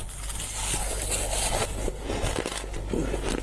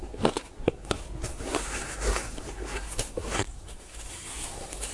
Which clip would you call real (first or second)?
first